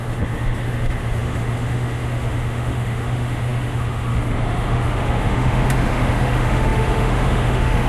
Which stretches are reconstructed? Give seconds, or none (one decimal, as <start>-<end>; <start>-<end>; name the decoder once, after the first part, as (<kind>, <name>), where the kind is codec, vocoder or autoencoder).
0.0-7.9 (autoencoder, DAC-VAE)